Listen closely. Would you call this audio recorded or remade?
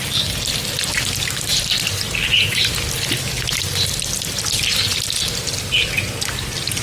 recorded